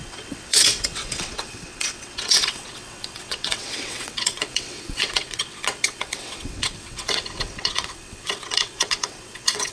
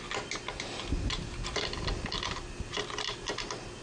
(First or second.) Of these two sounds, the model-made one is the first